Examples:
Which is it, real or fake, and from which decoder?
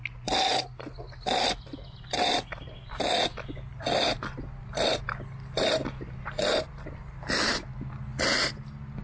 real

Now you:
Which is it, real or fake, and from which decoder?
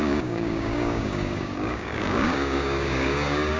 fake, codec, DAC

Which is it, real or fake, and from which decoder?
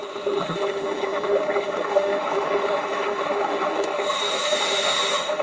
fake, autoencoder, DAC-VAE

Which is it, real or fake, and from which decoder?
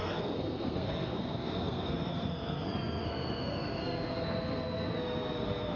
fake, codec, SNAC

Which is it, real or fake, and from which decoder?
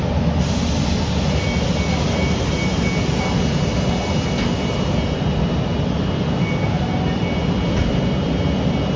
real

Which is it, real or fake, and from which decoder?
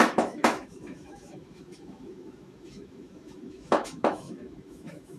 fake, autoencoder, DAC-VAE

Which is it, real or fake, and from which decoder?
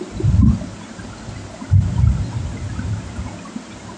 real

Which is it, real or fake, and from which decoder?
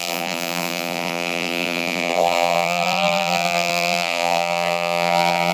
fake, vocoder, BigVGAN v2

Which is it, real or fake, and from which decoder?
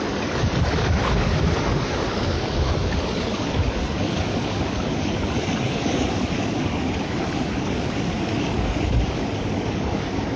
fake, codec, DAC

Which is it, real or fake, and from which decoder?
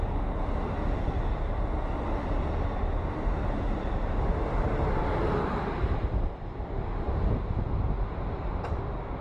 real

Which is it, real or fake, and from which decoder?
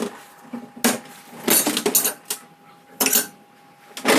real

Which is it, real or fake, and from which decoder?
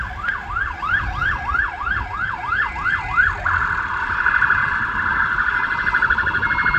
real